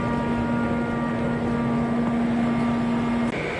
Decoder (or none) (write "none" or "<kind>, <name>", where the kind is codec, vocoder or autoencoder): none